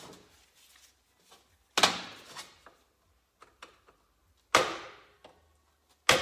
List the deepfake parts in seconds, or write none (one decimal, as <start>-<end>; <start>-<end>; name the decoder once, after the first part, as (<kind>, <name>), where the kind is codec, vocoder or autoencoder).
none